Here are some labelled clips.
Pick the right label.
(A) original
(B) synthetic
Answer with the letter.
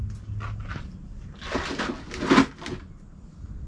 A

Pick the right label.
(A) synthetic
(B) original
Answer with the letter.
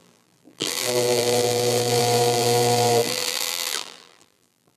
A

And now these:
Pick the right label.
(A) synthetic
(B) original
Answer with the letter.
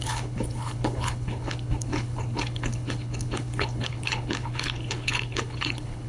A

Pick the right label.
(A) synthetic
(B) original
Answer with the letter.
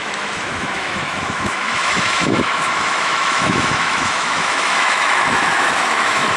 A